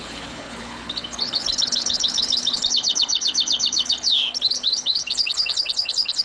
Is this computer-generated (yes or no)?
yes